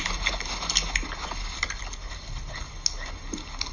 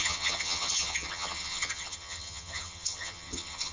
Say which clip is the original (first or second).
first